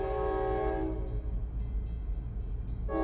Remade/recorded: recorded